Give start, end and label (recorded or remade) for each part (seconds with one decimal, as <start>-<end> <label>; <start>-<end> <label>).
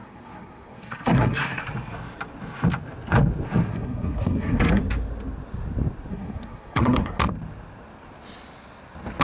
0.0-1.6 remade; 1.6-3.7 recorded; 3.7-4.8 remade; 4.8-6.1 recorded; 6.1-7.2 remade; 7.2-9.2 recorded